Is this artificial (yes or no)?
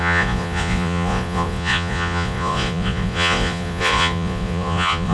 yes